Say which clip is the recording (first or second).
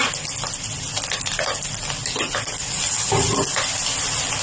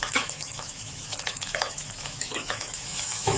first